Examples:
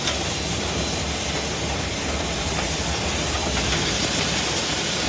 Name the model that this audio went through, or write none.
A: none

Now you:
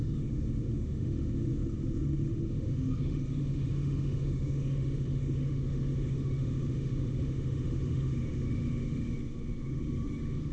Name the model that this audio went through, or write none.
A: autoencoder, DAC-VAE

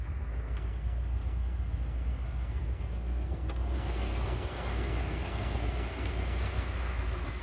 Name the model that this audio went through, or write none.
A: codec, SNAC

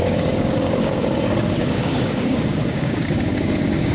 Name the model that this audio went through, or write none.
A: codec, DAC